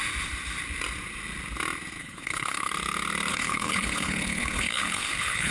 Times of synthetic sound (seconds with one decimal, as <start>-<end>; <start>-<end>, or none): 2.0-2.7; 3.3-5.5